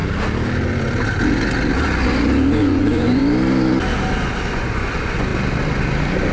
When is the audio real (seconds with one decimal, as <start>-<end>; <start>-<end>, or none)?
0.0-2.6; 3.2-4.5; 5.3-6.3